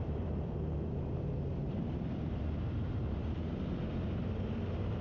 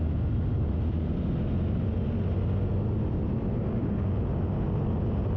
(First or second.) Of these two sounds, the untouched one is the second